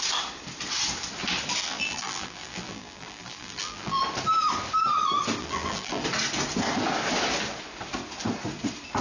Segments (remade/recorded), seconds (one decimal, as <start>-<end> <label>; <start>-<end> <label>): 0.0-1.6 recorded; 1.6-4.0 remade; 4.0-5.4 recorded; 5.4-6.0 remade; 6.0-9.0 recorded